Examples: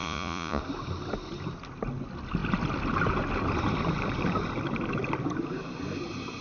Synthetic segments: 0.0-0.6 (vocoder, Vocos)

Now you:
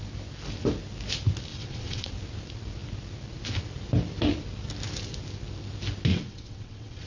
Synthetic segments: 1.5-2.1 (vocoder, WaveNeXt); 6.1-7.1

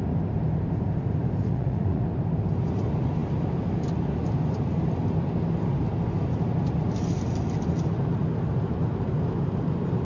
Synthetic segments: 1.4-2.0 (vocoder, Vocos)

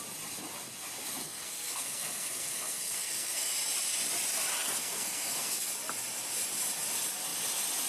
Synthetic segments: 1.2-3.5 (codec, SNAC); 4.8-5.7